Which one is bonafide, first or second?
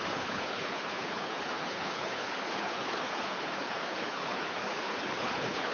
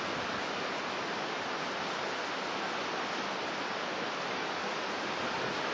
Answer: second